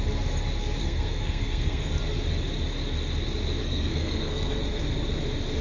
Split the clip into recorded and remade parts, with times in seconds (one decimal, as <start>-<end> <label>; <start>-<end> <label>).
0.0-0.8 recorded; 0.8-1.9 remade; 1.9-3.6 recorded; 3.6-4.6 remade; 4.6-5.6 recorded